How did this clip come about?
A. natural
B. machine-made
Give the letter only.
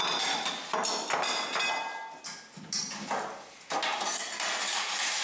A